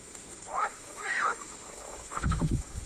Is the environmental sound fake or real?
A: fake